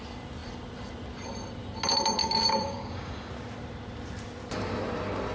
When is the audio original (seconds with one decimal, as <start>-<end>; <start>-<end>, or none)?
0.0-2.2; 3.3-5.3